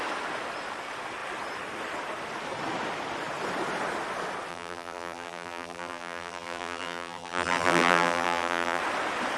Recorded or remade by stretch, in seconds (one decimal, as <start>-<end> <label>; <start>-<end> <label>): 0.0-4.5 recorded; 4.5-8.8 remade; 8.8-9.4 recorded